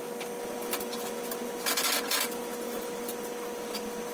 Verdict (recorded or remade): recorded